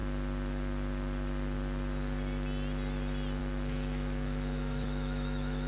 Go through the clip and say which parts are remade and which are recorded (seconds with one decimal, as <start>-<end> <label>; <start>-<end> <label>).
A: 0.0-3.4 recorded; 3.4-5.7 remade